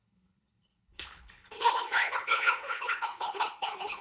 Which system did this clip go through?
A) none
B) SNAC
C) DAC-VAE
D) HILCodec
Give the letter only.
D